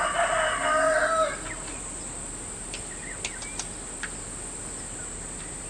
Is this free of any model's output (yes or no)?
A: yes